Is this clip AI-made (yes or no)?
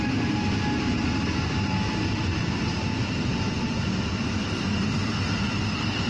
no